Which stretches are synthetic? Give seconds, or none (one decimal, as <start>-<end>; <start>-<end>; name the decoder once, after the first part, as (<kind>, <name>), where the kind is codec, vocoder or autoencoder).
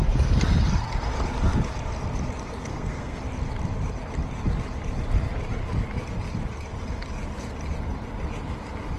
2.7-3.2 (codec, SNAC)